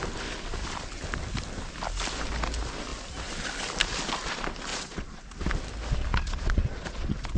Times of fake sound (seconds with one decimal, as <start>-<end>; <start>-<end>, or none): 4.7-5.2; 6.1-7.4